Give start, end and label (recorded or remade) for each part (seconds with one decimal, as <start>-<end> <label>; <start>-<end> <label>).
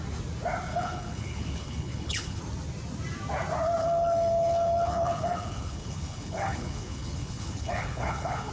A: 0.0-0.7 recorded; 0.7-2.4 remade; 2.4-3.8 recorded; 3.8-8.5 remade